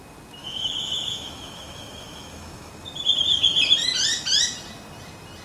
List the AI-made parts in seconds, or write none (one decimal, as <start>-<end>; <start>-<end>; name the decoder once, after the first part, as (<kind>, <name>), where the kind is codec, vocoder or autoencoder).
0.4-2.7 (autoencoder, DAC-VAE)